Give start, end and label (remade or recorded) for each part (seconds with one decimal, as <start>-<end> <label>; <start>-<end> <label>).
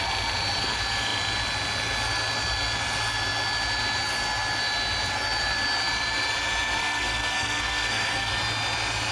0.0-6.8 recorded; 6.8-8.3 remade; 8.3-9.1 recorded